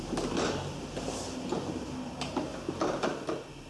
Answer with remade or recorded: recorded